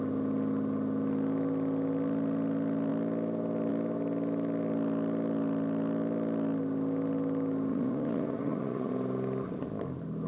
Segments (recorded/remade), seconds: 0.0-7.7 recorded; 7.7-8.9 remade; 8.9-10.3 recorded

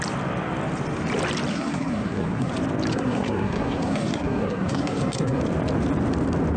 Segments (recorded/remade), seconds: 0.0-1.5 recorded; 1.5-2.5 remade; 2.5-2.9 recorded; 2.9-5.4 remade; 5.4-6.6 recorded